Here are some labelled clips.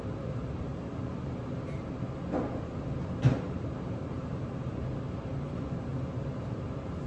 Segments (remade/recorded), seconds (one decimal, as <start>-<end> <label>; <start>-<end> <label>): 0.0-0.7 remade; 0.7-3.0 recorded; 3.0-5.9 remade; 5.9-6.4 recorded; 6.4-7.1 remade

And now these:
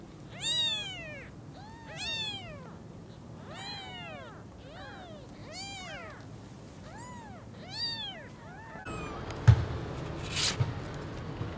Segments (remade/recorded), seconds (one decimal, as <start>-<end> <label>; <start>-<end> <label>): 0.0-11.6 recorded

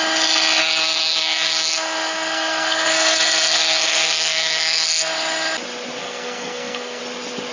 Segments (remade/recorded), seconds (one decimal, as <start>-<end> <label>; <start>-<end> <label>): 0.0-0.6 recorded; 0.6-5.1 remade; 5.1-6.0 recorded; 6.0-7.0 remade; 7.0-7.5 recorded

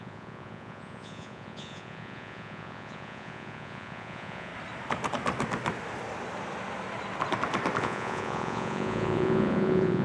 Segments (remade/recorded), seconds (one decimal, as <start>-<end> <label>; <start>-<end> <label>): 0.0-4.5 remade; 4.5-7.8 recorded; 7.8-10.0 remade

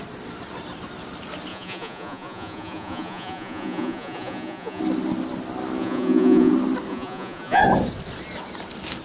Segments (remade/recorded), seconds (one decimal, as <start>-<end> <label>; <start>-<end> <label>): 0.0-1.5 recorded; 1.5-4.8 remade; 4.8-5.8 recorded; 5.8-6.5 remade; 6.5-6.9 recorded; 6.9-7.6 remade; 7.6-9.0 recorded

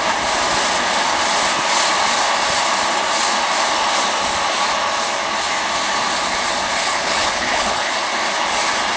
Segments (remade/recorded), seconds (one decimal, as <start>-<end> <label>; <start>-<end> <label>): 0.0-6.8 recorded; 6.8-7.9 remade; 7.9-9.0 recorded

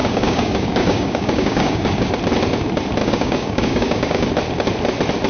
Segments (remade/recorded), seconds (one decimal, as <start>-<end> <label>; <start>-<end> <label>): 0.0-2.1 remade; 2.1-3.0 recorded; 3.0-4.3 remade; 4.3-5.3 recorded

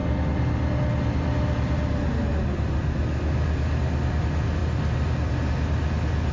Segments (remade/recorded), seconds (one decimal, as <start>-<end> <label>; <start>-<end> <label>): 0.0-6.3 recorded